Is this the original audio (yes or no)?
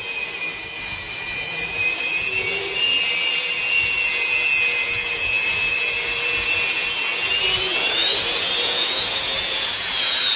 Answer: no